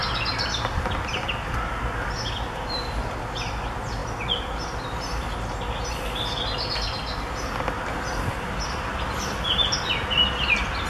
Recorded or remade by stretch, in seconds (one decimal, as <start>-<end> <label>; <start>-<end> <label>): 0.0-10.9 recorded